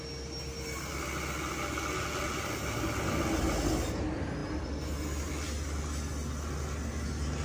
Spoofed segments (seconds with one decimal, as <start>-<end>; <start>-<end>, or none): none